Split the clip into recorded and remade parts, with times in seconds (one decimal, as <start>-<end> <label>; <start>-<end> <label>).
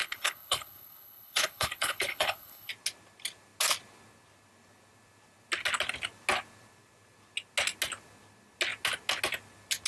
0.0-2.7 remade; 2.7-9.9 recorded